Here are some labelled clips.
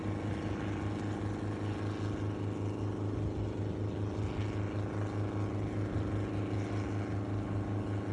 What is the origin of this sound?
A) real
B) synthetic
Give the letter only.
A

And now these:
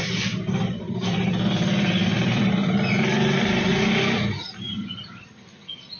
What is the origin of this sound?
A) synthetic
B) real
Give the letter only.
A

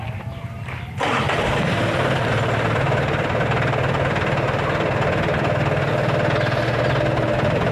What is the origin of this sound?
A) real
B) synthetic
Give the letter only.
A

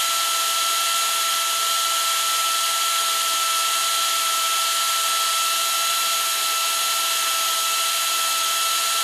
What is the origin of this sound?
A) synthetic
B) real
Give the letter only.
B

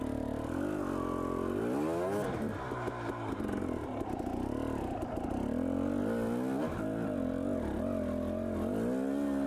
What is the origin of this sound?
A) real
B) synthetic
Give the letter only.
A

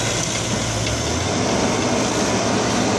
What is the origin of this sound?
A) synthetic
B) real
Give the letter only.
B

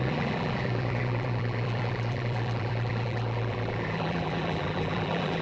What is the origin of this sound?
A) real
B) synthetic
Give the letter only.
B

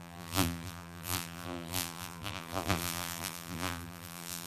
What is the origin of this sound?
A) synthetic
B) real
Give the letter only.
A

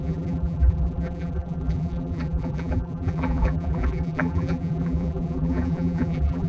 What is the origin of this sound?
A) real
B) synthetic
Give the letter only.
B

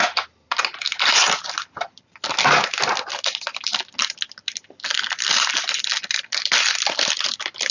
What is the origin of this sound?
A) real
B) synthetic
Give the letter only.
A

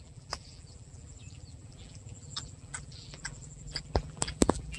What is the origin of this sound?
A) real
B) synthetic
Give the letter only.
B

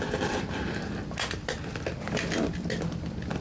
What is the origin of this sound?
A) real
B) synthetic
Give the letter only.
B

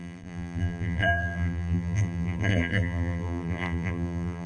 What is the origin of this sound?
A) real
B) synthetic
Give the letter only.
B